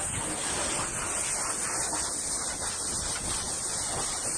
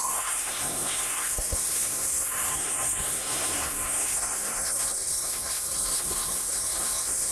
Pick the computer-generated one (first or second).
second